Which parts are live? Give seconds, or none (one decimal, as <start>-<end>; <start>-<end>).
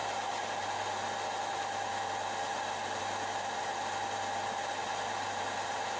0.0-6.0